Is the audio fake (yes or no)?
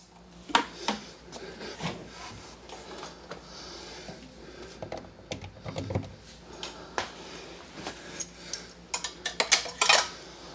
no